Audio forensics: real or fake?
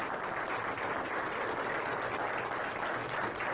real